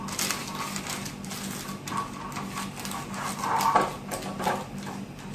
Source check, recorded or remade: recorded